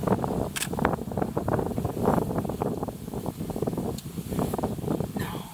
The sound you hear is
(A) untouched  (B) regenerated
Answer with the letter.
B